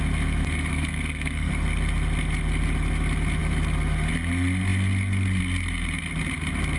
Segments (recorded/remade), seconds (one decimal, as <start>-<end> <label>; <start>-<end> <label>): 0.0-0.7 recorded; 0.7-1.5 remade; 1.5-6.8 recorded